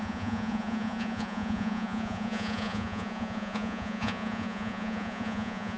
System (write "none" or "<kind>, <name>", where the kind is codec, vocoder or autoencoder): vocoder, Vocos